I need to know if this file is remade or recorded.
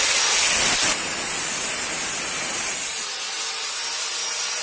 recorded